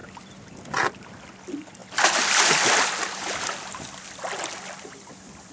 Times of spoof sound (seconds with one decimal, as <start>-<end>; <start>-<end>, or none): none